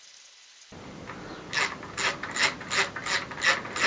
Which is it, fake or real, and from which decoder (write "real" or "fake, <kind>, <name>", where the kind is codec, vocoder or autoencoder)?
real